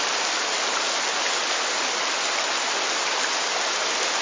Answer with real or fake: real